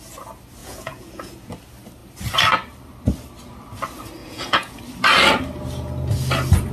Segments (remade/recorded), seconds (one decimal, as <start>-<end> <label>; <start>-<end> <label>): 0.0-0.6 recorded; 0.6-1.3 remade; 1.3-4.2 recorded; 4.2-4.8 remade; 4.8-6.7 recorded